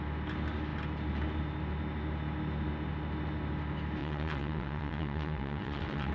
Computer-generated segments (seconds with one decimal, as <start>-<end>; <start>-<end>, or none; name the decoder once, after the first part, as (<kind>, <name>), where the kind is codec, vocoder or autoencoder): 4.0-6.1 (vocoder, WaveNeXt)